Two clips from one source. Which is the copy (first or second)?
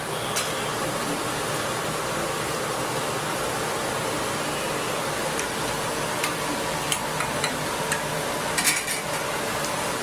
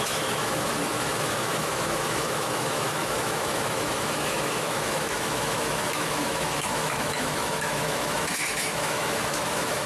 second